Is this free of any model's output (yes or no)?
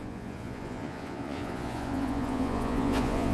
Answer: no